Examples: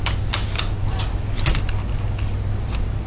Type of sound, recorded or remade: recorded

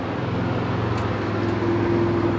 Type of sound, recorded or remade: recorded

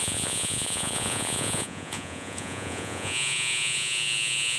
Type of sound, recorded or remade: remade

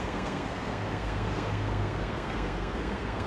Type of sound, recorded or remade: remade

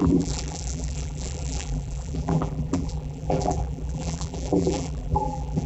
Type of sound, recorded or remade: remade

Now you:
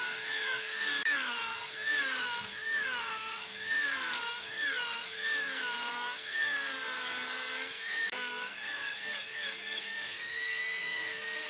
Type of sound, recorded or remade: remade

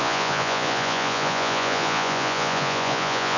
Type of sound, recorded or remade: remade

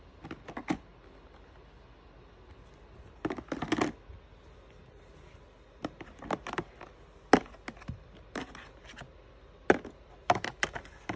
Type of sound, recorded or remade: recorded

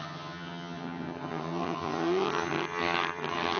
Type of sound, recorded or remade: remade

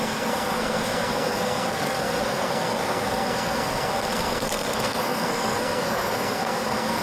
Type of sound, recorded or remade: remade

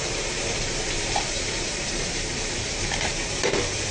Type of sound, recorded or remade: remade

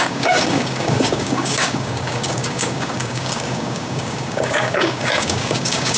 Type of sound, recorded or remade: remade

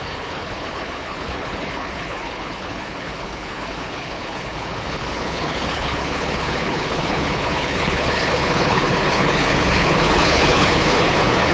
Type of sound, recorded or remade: remade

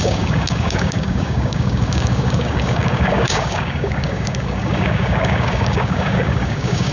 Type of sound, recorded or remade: remade